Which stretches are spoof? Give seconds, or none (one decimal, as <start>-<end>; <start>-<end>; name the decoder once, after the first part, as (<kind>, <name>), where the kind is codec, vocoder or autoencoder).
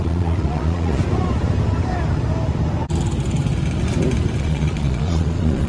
0.0-1.0 (vocoder, Vocos); 4.4-5.7